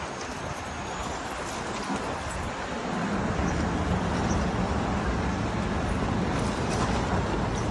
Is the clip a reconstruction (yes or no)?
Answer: no